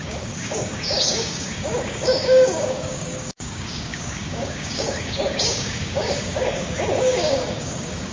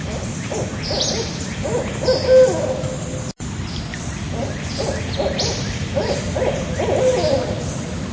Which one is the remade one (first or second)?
first